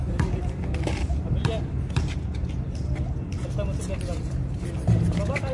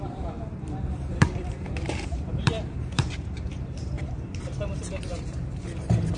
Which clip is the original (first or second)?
first